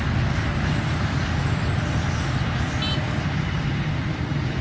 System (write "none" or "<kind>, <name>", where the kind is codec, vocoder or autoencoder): none